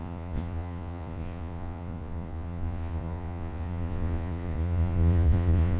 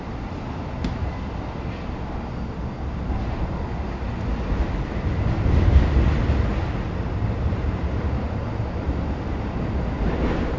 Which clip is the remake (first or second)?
first